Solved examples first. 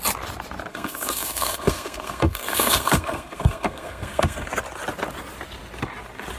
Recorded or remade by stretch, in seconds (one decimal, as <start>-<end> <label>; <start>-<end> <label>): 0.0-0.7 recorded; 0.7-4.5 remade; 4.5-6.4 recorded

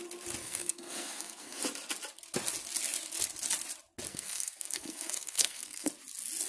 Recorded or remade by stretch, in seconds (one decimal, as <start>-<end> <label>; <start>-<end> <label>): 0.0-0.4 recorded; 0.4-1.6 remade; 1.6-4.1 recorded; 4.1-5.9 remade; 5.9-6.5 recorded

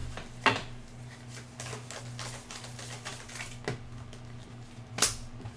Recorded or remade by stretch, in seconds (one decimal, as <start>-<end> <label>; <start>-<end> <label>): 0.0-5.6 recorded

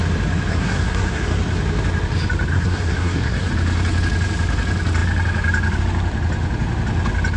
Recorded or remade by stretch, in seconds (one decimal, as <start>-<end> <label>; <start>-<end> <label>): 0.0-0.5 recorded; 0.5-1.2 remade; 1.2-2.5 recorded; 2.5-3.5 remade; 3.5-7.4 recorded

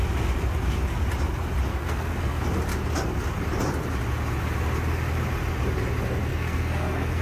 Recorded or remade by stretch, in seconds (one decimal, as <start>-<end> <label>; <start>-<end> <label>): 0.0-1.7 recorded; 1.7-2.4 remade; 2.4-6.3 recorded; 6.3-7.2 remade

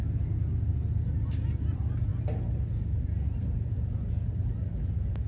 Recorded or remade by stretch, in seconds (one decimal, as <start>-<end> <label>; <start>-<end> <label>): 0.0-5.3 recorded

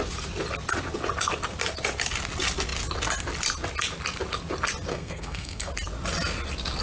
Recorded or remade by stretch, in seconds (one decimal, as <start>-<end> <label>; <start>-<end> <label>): 0.0-4.9 recorded; 4.9-5.7 remade; 5.7-6.8 recorded